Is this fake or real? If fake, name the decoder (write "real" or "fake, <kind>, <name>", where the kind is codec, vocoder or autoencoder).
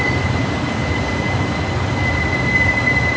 real